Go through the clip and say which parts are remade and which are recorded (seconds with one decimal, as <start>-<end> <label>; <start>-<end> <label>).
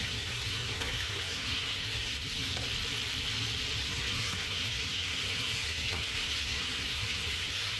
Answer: 0.0-2.5 remade; 2.5-3.8 recorded; 3.8-7.8 remade